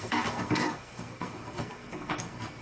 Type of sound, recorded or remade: remade